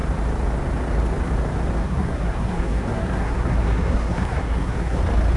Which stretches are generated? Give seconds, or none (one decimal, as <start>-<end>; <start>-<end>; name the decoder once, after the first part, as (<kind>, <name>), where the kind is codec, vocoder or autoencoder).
1.8-5.0 (codec, SNAC)